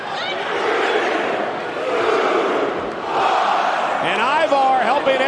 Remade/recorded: recorded